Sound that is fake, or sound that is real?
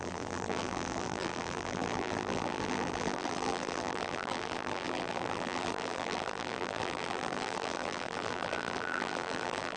fake